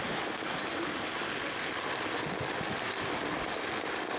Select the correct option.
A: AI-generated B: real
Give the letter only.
B